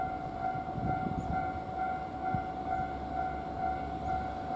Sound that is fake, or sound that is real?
real